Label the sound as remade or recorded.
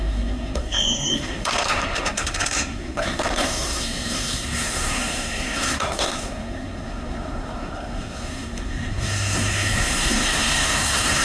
remade